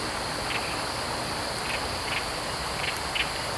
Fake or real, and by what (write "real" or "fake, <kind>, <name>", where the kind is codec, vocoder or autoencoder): real